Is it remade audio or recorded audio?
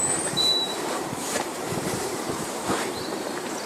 remade